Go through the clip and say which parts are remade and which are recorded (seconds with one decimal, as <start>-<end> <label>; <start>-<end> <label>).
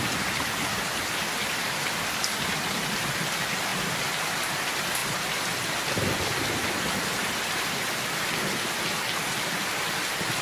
0.0-3.7 remade; 3.7-4.2 recorded; 4.2-5.0 remade; 5.0-5.7 recorded; 5.7-10.4 remade